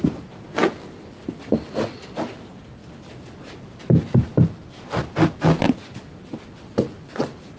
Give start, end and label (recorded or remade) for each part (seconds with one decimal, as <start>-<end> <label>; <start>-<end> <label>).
0.0-7.6 recorded